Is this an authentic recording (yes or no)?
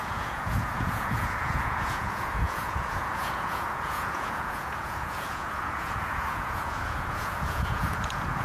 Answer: no